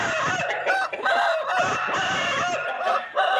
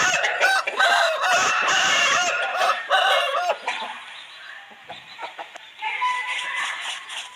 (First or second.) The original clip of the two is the first